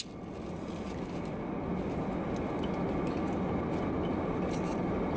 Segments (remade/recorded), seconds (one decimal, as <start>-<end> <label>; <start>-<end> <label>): 0.0-5.2 recorded